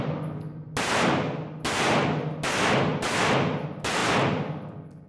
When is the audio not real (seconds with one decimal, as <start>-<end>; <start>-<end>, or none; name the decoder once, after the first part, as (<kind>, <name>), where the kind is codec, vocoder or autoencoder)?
none